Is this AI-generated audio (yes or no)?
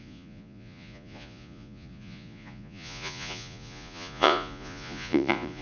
yes